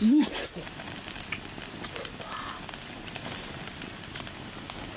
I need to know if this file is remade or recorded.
recorded